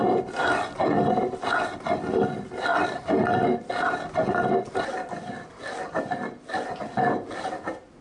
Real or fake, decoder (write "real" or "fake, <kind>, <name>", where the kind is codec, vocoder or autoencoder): real